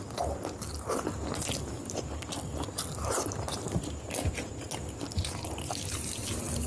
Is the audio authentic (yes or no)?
yes